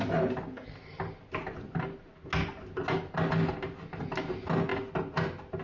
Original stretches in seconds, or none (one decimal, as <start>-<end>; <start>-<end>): 0.0-5.6